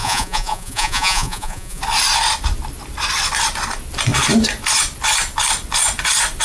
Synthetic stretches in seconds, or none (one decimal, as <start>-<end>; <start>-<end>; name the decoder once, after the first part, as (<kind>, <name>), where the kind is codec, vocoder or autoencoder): 0.0-1.8 (vocoder, Vocos)